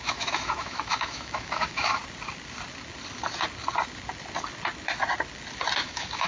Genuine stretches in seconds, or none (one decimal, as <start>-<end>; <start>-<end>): 2.0-5.8